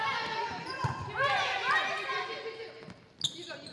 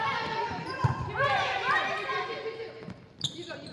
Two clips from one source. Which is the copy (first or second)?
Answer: second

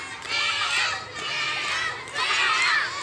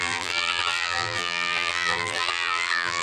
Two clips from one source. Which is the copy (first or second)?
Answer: second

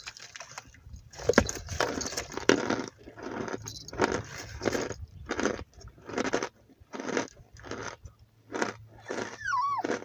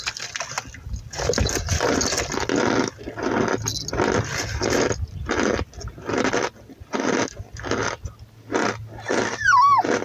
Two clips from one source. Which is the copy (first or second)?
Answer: first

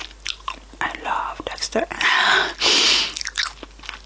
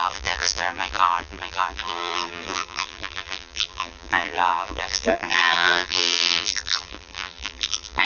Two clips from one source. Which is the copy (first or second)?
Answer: second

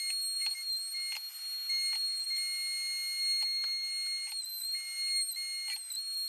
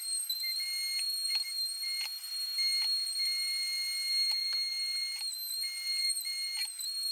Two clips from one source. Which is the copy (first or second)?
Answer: second